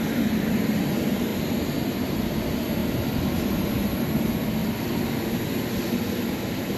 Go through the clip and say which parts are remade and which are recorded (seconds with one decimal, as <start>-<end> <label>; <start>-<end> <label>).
0.0-4.6 recorded; 4.6-5.2 remade; 5.2-6.8 recorded